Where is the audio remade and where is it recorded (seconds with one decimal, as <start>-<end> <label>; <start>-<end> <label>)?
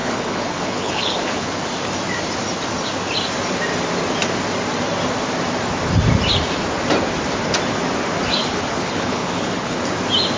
0.0-1.5 remade; 1.5-8.4 recorded; 8.4-9.8 remade; 9.8-10.4 recorded